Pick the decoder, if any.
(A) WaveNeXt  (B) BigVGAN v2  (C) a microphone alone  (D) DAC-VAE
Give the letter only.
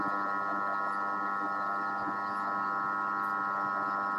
C